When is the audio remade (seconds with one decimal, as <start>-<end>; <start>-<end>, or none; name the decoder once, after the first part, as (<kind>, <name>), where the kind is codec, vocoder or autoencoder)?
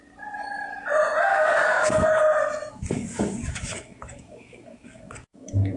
1.3-2.2 (codec, DAC); 2.7-5.8